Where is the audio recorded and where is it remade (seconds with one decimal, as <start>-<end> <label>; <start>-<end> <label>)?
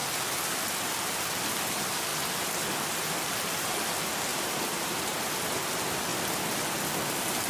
0.0-4.3 recorded; 4.3-5.3 remade; 5.3-7.5 recorded